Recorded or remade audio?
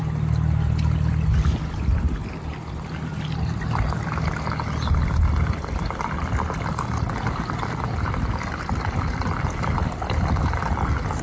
recorded